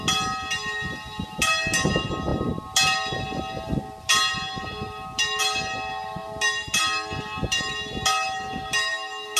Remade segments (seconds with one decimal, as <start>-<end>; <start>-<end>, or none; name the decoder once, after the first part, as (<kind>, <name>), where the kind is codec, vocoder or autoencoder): none